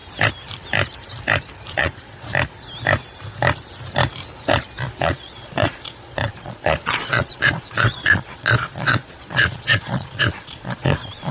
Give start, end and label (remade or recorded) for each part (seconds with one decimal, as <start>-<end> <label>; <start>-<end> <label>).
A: 0.0-1.7 recorded; 1.7-2.3 remade; 2.3-5.0 recorded; 5.0-11.3 remade

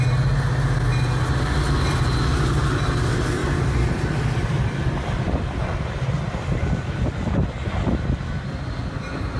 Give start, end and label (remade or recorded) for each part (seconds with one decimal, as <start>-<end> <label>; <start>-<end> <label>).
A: 0.0-9.4 recorded

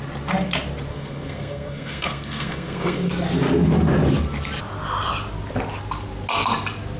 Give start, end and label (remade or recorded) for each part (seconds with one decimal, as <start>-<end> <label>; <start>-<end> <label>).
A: 0.0-0.9 recorded; 0.9-3.1 remade; 3.1-7.0 recorded

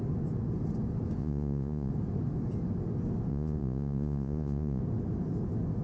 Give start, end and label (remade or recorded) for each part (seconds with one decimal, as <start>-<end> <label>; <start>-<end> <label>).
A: 0.0-1.2 recorded; 1.2-1.9 remade; 1.9-3.3 recorded; 3.3-4.8 remade; 4.8-5.8 recorded

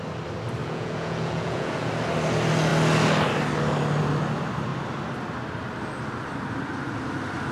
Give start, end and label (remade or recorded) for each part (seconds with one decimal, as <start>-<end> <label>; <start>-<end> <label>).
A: 0.0-0.6 recorded; 0.6-1.9 remade; 1.9-7.5 recorded

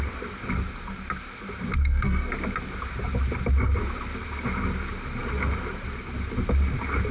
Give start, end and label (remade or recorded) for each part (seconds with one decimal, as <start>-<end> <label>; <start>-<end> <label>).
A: 0.0-1.8 recorded; 1.8-2.3 remade; 2.3-7.1 recorded

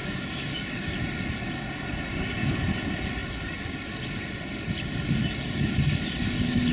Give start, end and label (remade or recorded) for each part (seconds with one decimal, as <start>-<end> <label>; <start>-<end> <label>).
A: 0.0-0.9 remade; 0.9-6.7 recorded